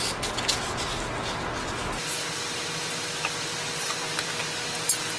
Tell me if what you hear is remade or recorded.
recorded